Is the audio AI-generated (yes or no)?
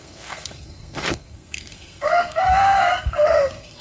yes